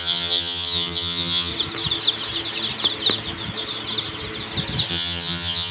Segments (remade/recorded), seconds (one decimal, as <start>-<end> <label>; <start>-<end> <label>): 0.0-1.5 remade; 1.5-4.9 recorded; 4.9-5.7 remade